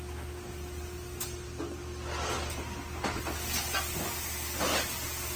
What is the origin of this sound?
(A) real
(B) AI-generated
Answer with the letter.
A